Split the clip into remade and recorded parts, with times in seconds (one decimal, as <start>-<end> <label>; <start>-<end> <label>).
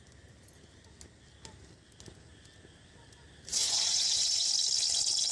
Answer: 0.0-3.6 recorded; 3.6-4.5 remade; 4.5-5.3 recorded